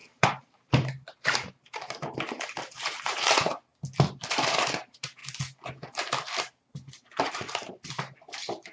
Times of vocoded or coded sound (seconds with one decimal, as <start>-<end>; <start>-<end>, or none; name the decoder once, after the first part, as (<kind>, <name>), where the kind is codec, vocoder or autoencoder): 0.0-3.7 (vocoder, BigVGAN v2); 4.3-5.2; 7.3-8.7